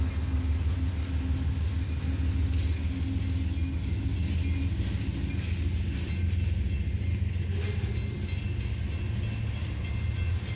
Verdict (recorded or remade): recorded